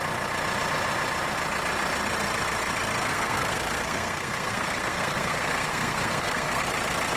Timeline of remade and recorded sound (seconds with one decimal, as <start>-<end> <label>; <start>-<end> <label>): 0.0-3.1 recorded; 3.1-6.6 remade; 6.6-7.2 recorded